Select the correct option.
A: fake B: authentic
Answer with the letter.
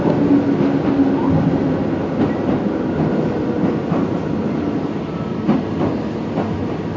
B